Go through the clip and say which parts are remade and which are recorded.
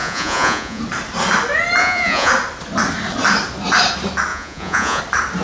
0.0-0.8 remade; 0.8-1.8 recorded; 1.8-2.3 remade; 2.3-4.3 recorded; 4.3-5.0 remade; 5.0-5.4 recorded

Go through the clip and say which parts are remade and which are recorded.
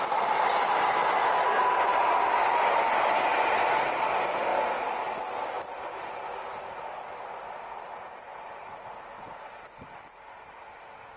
0.0-8.3 recorded; 8.3-10.2 remade; 10.2-11.2 recorded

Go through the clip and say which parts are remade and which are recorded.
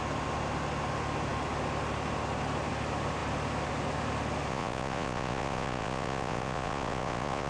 0.0-4.5 recorded; 4.5-7.5 remade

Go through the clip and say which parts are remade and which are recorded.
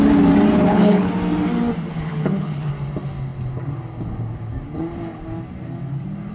0.0-0.5 recorded; 0.5-1.1 remade; 1.1-1.9 recorded; 1.9-2.7 remade; 2.7-6.3 recorded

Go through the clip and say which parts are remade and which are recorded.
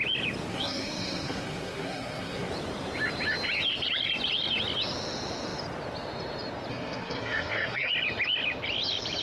0.0-0.5 recorded; 0.5-2.5 remade; 2.5-6.7 recorded; 6.7-7.9 remade; 7.9-9.2 recorded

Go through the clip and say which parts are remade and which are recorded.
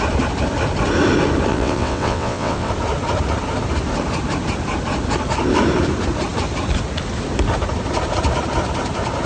0.0-1.5 recorded; 1.5-2.7 remade; 2.7-9.3 recorded